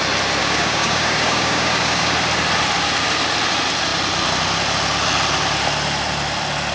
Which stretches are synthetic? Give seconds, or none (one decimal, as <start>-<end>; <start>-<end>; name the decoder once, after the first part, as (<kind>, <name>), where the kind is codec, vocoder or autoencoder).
0.4-2.1 (codec, DAC)